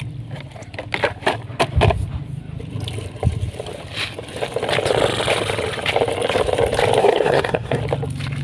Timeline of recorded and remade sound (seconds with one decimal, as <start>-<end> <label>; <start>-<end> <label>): 0.0-7.0 recorded; 7.0-7.8 remade; 7.8-8.4 recorded